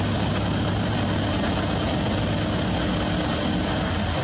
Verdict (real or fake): real